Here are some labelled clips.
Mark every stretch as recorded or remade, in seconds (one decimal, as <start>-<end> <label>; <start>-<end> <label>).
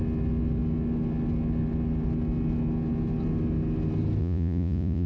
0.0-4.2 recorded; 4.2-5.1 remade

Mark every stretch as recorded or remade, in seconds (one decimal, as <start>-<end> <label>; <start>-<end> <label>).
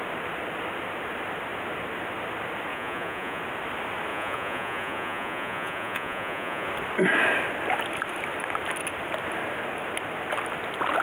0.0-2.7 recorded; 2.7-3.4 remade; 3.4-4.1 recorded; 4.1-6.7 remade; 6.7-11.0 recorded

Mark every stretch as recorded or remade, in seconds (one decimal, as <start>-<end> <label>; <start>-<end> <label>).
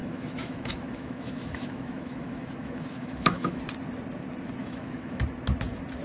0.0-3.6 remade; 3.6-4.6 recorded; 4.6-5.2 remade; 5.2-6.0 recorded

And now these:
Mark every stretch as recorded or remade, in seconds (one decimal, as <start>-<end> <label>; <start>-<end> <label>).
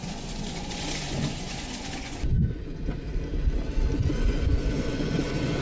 0.0-2.6 remade; 2.6-4.0 recorded; 4.0-5.6 remade